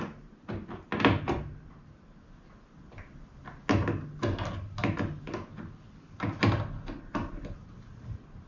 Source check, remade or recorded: recorded